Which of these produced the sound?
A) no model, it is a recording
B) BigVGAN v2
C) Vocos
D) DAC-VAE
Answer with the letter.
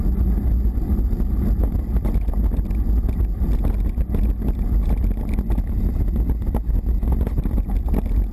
A